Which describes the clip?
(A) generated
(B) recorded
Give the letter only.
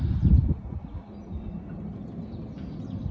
B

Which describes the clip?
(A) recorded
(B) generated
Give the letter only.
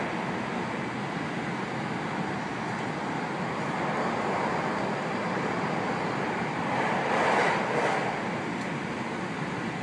A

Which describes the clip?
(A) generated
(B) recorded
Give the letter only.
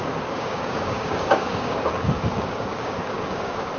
A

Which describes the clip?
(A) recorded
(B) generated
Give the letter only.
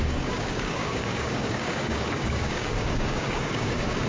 B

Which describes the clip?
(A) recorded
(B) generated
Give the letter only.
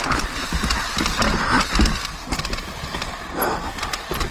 A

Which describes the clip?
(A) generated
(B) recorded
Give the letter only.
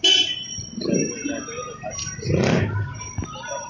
B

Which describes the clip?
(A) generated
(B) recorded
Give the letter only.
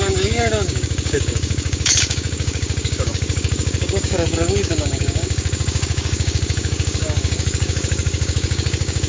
A